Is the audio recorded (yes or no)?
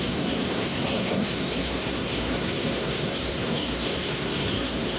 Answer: no